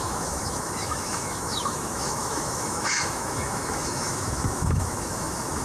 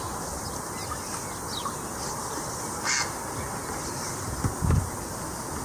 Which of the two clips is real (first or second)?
second